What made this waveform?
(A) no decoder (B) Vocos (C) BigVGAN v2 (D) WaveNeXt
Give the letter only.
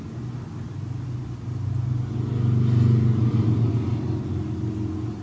A